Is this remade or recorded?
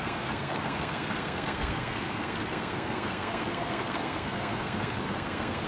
remade